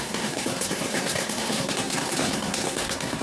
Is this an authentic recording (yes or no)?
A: no